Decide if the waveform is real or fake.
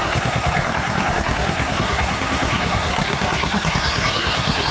fake